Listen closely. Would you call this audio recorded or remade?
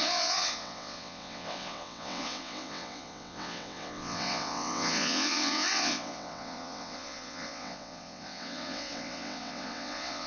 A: remade